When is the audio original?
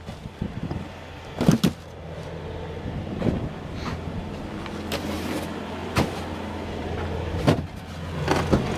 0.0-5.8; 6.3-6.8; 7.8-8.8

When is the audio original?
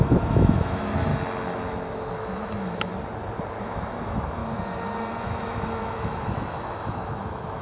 1.1-2.1; 2.9-3.6; 4.4-5.2